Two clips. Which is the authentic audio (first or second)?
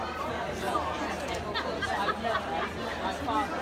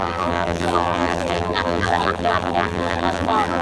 first